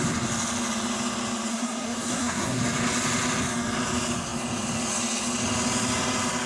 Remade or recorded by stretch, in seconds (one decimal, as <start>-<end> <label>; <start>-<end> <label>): 0.0-1.5 recorded; 1.5-2.6 remade; 2.6-6.5 recorded